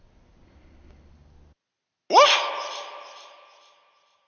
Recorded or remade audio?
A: recorded